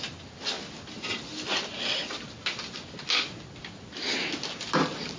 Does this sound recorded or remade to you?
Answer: recorded